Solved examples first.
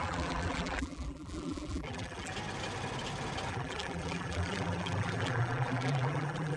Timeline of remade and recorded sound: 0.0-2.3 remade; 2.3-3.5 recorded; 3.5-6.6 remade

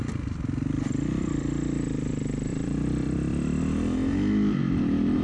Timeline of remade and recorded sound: 0.0-2.1 remade; 2.1-2.5 recorded; 2.5-3.6 remade; 3.6-5.2 recorded

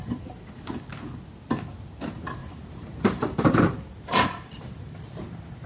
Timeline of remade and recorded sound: 0.0-0.5 remade; 0.5-2.4 recorded; 2.4-5.7 remade

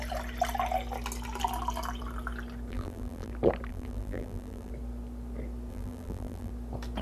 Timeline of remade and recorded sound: 0.0-2.7 recorded; 2.7-3.3 remade; 3.3-3.7 recorded; 3.7-4.7 remade; 4.7-5.7 recorded; 5.7-6.5 remade; 6.5-7.0 recorded